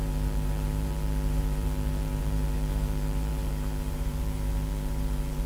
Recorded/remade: remade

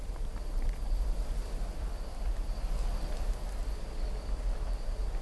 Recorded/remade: recorded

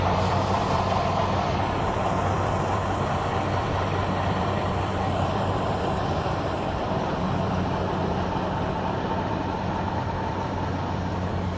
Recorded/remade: remade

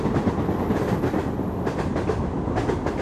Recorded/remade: recorded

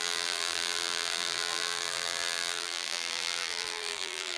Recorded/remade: remade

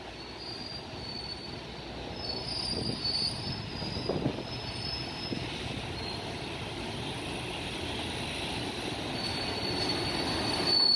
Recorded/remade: recorded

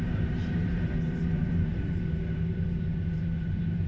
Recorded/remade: remade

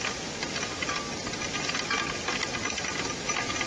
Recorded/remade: recorded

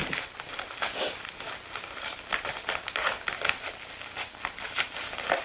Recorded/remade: recorded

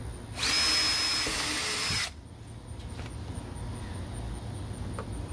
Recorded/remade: recorded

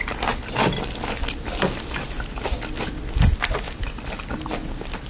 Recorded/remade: recorded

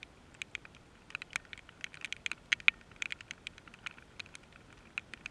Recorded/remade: recorded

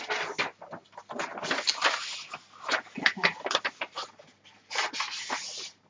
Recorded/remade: recorded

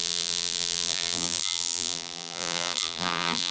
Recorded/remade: remade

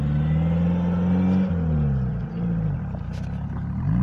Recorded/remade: recorded